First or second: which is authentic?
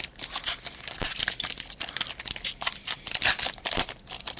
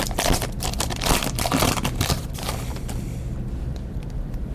second